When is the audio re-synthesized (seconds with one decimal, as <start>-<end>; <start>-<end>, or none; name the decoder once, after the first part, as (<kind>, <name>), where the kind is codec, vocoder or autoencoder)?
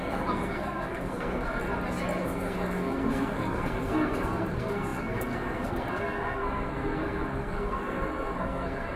0.0-1.6 (codec, SNAC); 2.2-9.0